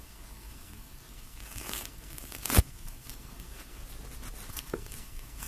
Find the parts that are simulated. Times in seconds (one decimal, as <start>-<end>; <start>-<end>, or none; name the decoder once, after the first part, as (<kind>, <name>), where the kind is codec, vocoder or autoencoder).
0.0-3.8 (codec, SNAC); 4.5-5.5